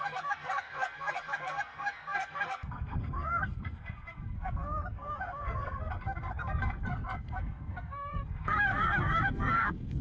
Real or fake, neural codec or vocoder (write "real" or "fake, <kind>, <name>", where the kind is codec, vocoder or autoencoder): fake, codec, SNAC